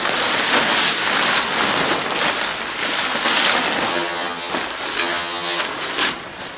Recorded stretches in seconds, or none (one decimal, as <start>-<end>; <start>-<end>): 0.0-3.9; 4.5-5.0; 5.6-6.6